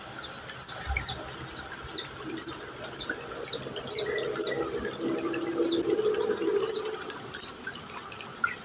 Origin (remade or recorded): recorded